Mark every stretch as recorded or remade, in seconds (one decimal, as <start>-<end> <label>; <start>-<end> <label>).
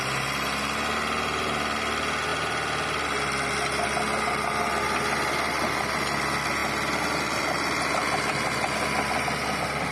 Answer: 0.0-9.9 recorded